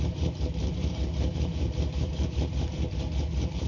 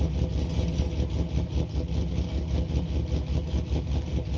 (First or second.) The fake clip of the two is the first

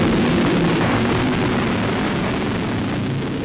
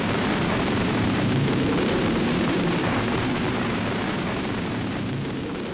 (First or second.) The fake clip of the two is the second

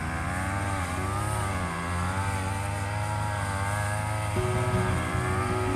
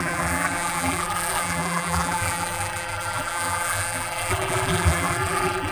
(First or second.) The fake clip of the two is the second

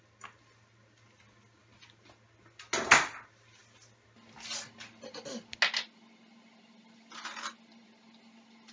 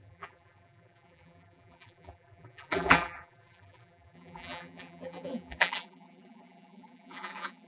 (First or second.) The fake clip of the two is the second